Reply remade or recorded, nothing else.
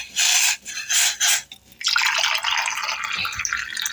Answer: recorded